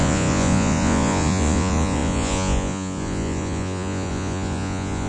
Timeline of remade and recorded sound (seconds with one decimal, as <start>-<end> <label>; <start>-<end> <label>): 0.0-5.1 remade